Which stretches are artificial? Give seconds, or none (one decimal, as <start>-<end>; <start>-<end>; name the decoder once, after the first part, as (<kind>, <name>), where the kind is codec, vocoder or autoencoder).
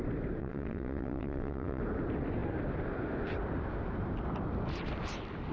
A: 0.4-1.8 (vocoder, WaveNeXt)